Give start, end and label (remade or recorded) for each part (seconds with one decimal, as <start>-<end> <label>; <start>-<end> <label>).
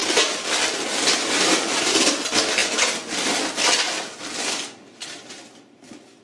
0.0-6.2 recorded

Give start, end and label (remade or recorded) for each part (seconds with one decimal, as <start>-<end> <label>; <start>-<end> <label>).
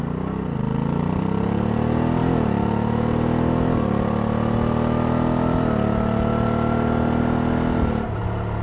0.0-8.6 recorded